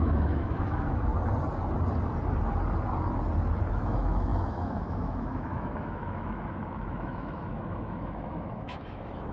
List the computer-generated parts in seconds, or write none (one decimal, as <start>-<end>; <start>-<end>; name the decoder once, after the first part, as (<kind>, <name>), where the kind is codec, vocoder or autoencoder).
0.0-1.1 (autoencoder, DAC-VAE); 3.7-9.3